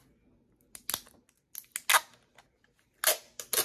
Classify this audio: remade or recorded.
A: recorded